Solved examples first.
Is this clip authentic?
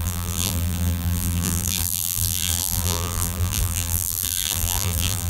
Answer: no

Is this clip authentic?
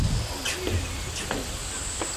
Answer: yes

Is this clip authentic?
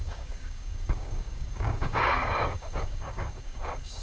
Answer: no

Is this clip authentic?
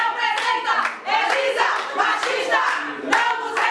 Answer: yes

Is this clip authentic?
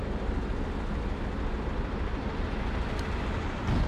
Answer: yes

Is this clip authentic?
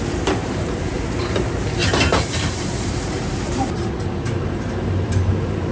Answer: no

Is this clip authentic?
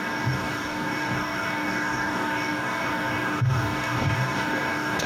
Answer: no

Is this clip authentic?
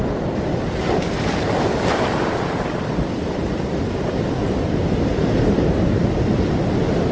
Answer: no